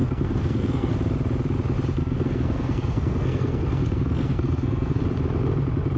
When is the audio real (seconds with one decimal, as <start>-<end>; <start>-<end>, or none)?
0.9-2.0; 5.0-6.0

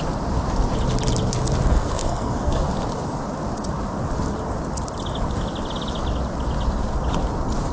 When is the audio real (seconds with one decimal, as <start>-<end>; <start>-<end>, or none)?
0.0-1.7; 2.7-7.7

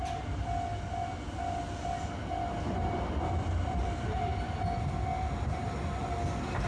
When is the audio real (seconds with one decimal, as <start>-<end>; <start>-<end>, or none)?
0.0-6.7

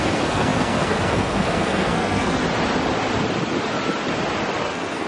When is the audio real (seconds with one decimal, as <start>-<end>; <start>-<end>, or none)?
2.4-4.6

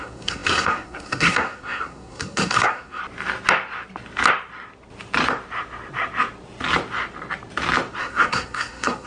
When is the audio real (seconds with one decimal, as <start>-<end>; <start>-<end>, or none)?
3.0-8.0